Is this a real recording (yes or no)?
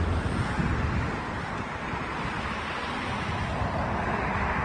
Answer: yes